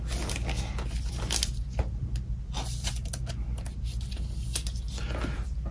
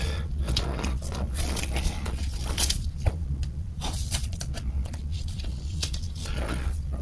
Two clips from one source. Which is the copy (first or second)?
second